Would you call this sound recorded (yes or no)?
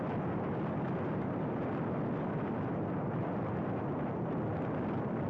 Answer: yes